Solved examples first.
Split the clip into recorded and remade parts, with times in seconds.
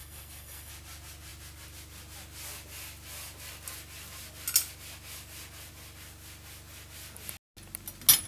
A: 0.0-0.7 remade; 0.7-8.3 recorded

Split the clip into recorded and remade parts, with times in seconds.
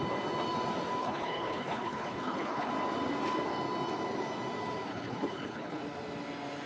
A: 0.0-1.0 recorded; 1.0-2.7 remade; 2.7-4.9 recorded; 4.9-5.8 remade; 5.8-6.7 recorded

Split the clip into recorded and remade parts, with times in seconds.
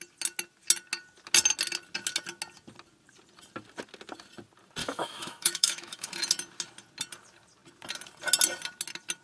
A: 0.0-4.8 recorded; 4.8-6.1 remade; 6.1-9.2 recorded